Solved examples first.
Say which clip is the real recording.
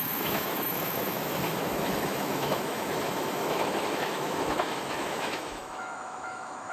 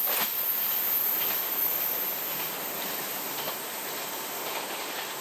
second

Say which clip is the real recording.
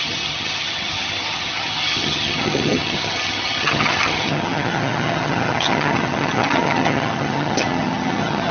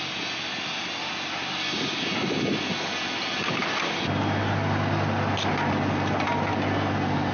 second